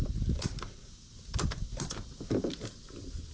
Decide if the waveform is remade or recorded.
recorded